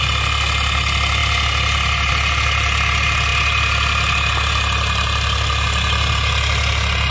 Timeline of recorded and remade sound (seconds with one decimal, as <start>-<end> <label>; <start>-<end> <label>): 0.0-7.1 recorded